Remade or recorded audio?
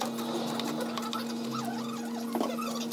recorded